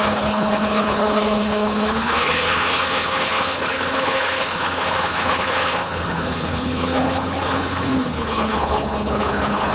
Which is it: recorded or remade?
remade